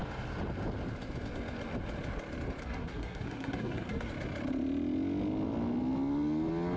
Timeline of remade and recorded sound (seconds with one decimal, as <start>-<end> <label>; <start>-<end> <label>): 0.0-2.6 recorded; 2.6-4.1 remade; 4.1-6.8 recorded